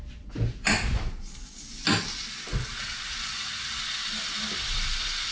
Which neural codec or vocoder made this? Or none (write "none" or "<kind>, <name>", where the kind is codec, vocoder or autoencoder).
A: none